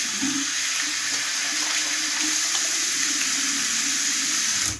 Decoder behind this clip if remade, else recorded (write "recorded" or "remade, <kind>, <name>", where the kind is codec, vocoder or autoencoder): recorded